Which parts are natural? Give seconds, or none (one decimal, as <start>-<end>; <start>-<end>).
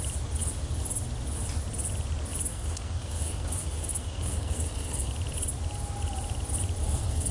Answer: 0.0-2.5; 5.1-6.8